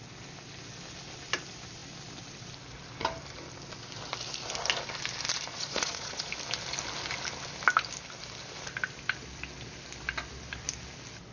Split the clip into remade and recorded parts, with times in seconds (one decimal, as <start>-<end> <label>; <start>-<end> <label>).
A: 0.0-5.5 recorded; 5.5-6.3 remade; 6.3-11.3 recorded